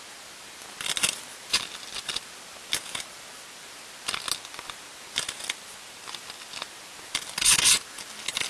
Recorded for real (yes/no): yes